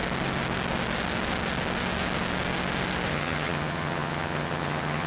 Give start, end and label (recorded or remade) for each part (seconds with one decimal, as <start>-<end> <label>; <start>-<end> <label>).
0.0-3.1 recorded; 3.1-5.1 remade

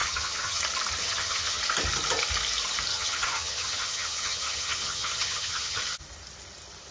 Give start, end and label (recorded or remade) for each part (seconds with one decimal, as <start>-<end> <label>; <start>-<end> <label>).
0.0-0.6 remade; 0.6-1.0 recorded; 1.0-1.6 remade; 1.6-2.9 recorded; 2.9-5.8 remade; 5.8-6.9 recorded